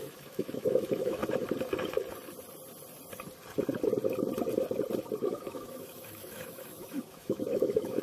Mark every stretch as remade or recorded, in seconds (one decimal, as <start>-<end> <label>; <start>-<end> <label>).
0.0-1.2 remade; 1.2-5.2 recorded; 5.2-8.0 remade